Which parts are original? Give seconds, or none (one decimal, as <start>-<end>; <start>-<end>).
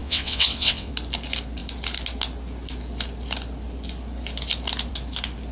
0.9-5.5